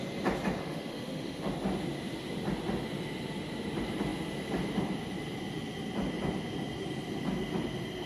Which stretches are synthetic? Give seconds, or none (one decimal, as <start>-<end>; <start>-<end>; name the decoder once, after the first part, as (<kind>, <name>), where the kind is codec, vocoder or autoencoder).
0.6-1.5 (autoencoder, DAC-VAE)